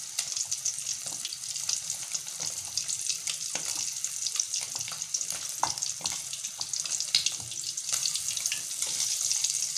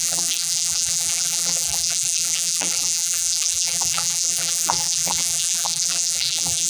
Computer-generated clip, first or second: second